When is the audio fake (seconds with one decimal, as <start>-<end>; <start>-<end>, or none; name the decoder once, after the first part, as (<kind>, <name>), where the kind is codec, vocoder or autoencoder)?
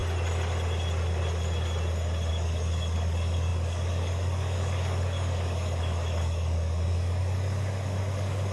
2.3-8.5 (codec, DAC)